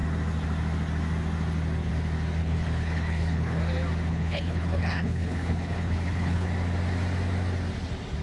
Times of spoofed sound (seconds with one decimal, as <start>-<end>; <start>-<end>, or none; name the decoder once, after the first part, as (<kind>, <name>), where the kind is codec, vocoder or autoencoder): 2.4-3.6 (codec, HILCodec); 4.1-6.5